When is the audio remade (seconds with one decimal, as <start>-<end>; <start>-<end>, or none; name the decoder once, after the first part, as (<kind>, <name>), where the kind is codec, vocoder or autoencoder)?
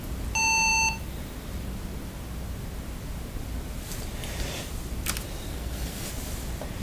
5.5-6.1 (codec, SNAC)